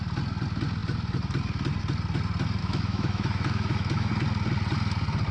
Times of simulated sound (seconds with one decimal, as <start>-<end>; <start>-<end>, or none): 2.6-4.1